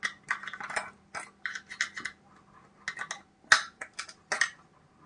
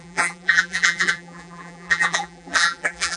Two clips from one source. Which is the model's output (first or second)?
second